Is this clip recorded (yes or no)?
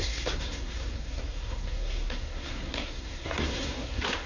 no